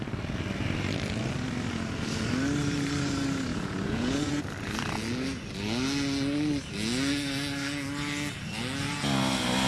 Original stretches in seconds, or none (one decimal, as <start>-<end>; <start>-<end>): 0.0-3.5; 4.4-9.7